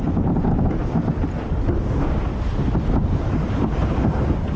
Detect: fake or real real